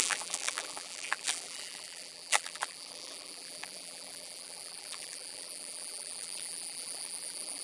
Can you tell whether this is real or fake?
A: fake